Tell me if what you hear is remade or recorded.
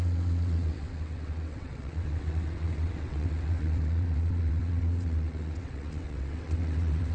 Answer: remade